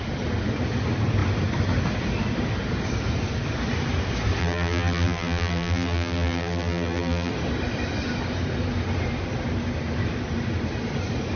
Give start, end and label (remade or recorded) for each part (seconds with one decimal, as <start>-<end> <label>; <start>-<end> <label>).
0.0-4.4 recorded; 4.4-7.3 remade; 7.3-11.4 recorded